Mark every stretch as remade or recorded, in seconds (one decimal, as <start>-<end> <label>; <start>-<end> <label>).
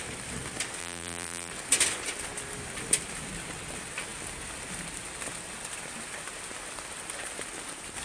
0.0-0.8 recorded; 0.8-1.5 remade; 1.5-8.0 recorded